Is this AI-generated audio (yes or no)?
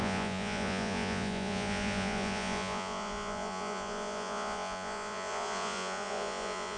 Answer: yes